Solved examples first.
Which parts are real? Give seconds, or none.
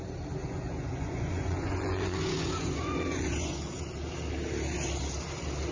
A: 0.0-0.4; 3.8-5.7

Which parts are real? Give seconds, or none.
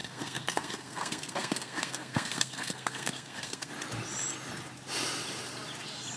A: 3.7-6.2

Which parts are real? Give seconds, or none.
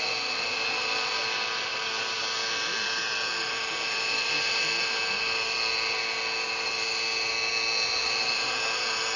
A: 0.0-3.3; 5.2-9.2